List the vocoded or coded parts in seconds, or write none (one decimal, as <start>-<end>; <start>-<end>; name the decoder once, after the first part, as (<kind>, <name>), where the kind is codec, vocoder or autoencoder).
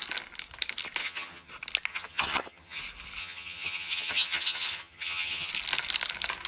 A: 1.0-1.5 (vocoder, HiFi-GAN); 1.9-2.8; 3.2-5.5